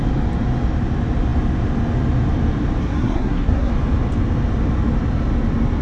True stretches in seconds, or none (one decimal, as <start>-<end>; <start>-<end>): 0.0-2.8; 3.7-5.8